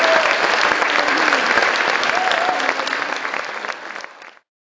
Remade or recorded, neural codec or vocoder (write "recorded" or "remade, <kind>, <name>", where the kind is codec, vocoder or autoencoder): recorded